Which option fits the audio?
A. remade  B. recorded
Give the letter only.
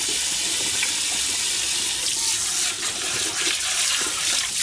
B